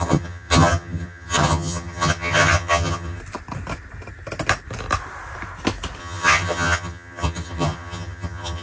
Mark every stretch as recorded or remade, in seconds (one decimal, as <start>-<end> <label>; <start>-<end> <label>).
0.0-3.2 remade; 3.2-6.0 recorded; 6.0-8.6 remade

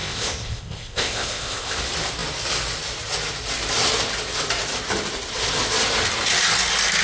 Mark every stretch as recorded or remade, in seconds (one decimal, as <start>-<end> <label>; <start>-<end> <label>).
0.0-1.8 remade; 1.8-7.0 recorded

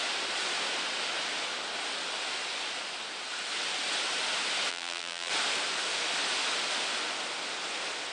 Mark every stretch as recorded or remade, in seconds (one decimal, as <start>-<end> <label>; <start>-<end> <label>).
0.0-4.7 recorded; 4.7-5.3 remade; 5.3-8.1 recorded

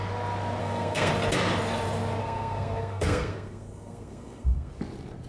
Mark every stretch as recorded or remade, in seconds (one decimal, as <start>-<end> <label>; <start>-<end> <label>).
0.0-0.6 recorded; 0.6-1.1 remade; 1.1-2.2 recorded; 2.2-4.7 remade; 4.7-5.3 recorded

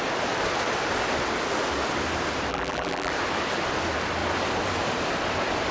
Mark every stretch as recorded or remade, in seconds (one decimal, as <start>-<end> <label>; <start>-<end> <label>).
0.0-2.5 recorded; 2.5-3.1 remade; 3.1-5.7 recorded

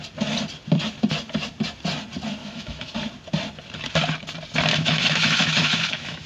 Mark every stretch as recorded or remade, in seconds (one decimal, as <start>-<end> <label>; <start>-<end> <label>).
0.0-2.4 recorded; 2.4-2.9 remade; 2.9-4.7 recorded; 4.7-6.3 remade

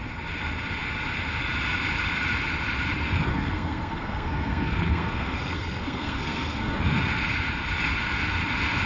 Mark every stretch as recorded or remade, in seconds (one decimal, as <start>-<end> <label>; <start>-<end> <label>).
0.0-3.3 recorded; 3.3-6.8 remade; 6.8-8.9 recorded